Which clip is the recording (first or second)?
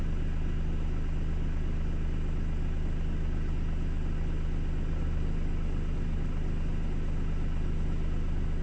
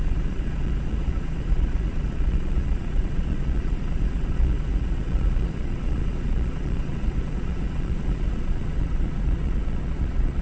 first